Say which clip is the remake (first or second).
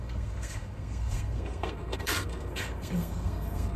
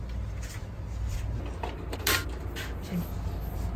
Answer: first